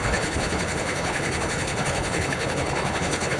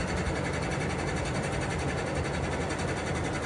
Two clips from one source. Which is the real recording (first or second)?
second